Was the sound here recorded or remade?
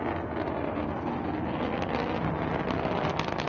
recorded